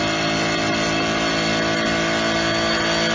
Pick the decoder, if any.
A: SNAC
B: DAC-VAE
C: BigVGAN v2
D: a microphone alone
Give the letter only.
D